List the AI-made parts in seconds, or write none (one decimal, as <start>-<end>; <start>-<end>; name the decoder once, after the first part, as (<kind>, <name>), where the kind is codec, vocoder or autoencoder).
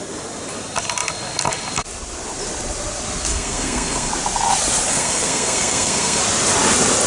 3.3-4.1 (codec, SNAC); 4.9-6.2